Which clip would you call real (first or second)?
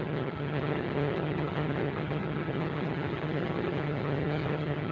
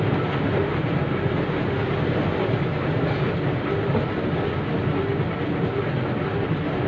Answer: second